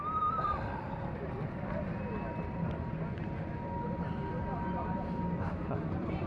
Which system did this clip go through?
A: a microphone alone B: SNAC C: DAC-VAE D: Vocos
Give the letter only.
A